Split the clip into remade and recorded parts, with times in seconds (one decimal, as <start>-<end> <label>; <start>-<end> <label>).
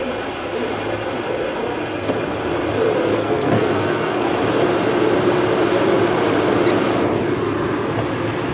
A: 0.0-3.1 recorded; 3.1-4.3 remade; 4.3-8.5 recorded